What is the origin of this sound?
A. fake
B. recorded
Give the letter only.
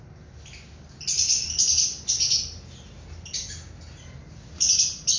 B